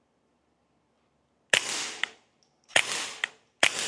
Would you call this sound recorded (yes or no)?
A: yes